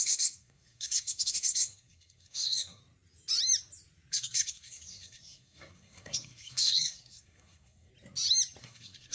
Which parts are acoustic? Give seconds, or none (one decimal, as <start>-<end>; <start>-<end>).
2.8-4.1; 7.9-8.6